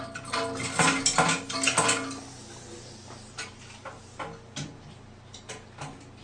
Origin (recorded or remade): recorded